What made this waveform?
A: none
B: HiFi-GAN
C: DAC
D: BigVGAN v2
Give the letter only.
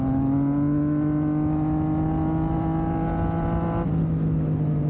A